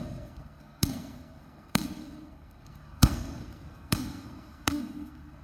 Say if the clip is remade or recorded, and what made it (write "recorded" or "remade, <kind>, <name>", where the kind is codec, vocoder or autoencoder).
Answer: remade, codec, SNAC